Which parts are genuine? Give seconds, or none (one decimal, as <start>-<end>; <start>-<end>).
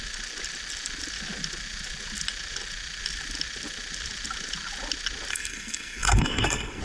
0.0-5.3